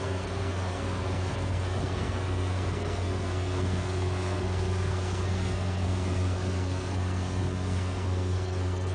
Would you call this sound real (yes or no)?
no